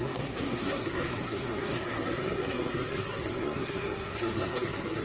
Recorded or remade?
remade